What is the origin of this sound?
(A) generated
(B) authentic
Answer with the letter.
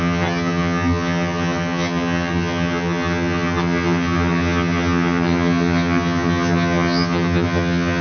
A